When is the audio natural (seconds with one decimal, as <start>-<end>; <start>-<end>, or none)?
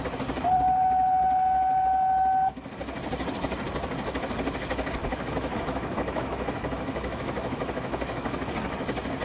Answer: 0.0-5.0; 8.5-9.2